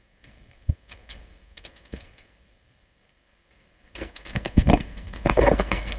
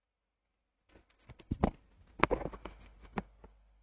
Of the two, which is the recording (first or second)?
second